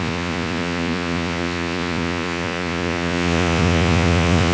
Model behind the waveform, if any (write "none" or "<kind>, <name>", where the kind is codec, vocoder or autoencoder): vocoder, Vocos